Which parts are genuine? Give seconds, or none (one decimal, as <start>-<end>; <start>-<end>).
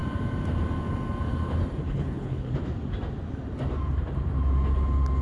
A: 0.0-1.8; 2.5-5.2